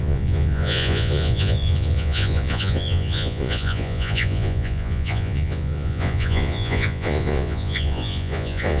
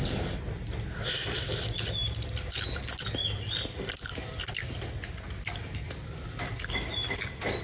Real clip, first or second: second